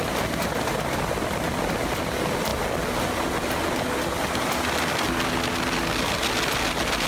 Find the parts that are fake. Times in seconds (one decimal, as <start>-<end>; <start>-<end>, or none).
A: none